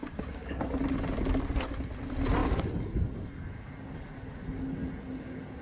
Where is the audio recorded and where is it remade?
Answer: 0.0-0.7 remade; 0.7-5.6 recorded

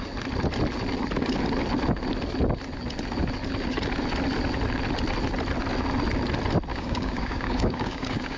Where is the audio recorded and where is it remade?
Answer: 0.0-6.7 recorded; 6.7-8.4 remade

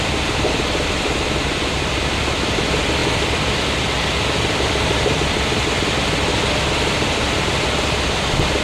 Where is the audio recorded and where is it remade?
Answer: 0.0-8.6 recorded

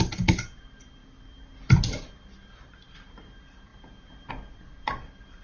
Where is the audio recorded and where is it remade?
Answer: 0.0-5.4 recorded

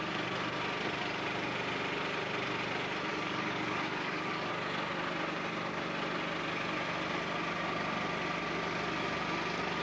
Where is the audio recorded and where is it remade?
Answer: 0.0-3.1 recorded; 3.1-4.5 remade; 4.5-9.8 recorded

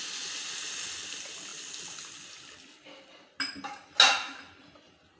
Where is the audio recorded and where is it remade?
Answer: 0.0-5.2 recorded

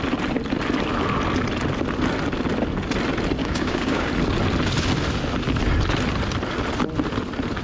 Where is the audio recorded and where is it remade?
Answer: 0.0-3.4 recorded; 3.4-4.1 remade; 4.1-7.6 recorded